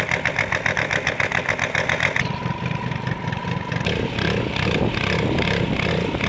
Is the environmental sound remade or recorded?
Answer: recorded